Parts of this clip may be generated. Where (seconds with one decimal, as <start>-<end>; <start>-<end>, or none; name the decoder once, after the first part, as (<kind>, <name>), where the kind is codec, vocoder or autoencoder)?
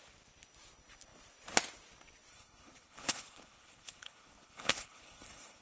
2.3-5.6 (codec, HILCodec)